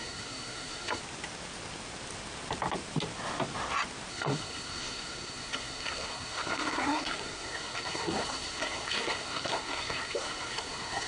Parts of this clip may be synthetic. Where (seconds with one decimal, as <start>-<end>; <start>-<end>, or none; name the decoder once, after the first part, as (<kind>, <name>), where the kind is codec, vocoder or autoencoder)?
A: 0.0-1.0 (codec, SNAC); 4.1-11.1